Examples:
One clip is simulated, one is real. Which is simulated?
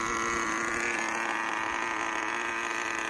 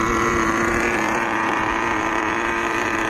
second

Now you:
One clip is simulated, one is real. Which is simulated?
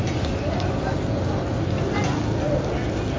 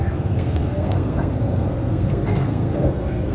second